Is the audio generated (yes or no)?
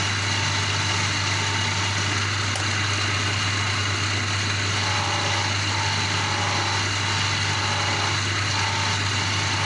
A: no